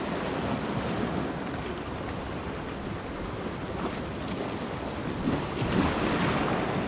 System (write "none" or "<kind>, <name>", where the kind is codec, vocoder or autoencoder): none